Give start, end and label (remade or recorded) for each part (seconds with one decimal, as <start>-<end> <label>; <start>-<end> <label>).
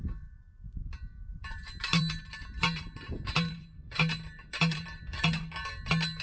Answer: 0.0-1.3 recorded; 1.3-5.0 remade; 5.0-6.2 recorded